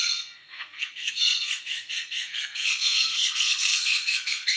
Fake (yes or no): yes